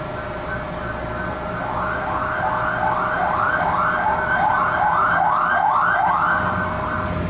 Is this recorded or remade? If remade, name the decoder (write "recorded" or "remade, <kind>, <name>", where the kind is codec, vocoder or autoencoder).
recorded